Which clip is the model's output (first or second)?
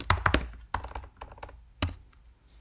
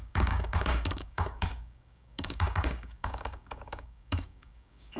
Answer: second